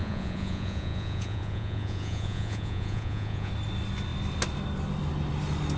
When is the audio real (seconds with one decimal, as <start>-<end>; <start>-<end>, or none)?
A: 3.5-5.8